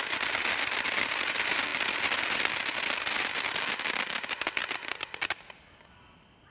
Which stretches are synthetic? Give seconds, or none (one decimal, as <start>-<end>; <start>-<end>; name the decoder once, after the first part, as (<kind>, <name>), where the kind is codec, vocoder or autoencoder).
none